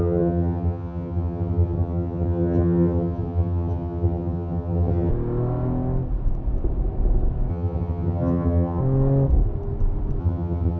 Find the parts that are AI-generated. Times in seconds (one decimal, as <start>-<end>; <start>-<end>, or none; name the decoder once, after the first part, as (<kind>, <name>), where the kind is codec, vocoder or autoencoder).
0.0-5.1 (vocoder, HiFi-GAN); 7.5-8.8; 10.2-10.8